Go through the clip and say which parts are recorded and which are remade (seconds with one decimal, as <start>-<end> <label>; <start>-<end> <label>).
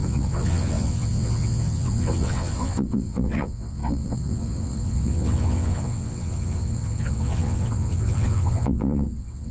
0.0-9.5 remade